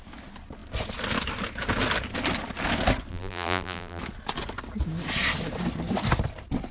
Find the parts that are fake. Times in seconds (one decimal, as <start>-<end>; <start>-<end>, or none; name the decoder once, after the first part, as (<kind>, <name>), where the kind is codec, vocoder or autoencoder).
3.1-4.0 (vocoder, BigVGAN v2)

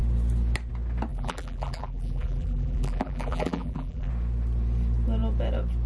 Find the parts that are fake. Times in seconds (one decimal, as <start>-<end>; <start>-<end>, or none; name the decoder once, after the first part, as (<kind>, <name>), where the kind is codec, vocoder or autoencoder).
1.1-4.1 (vocoder, BigVGAN v2)

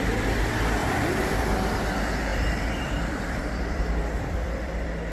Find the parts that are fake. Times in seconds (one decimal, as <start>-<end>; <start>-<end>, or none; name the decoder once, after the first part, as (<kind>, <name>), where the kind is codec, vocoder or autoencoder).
0.8-1.4 (vocoder, BigVGAN v2); 2.3-5.1